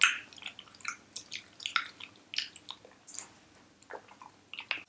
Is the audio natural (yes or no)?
yes